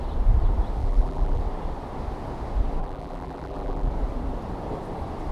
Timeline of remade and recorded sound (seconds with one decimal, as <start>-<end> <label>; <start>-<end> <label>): 0.0-0.8 recorded; 0.8-1.4 remade; 1.4-2.8 recorded; 2.8-3.9 remade; 3.9-5.3 recorded